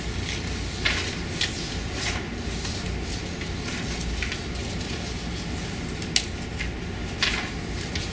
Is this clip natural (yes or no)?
yes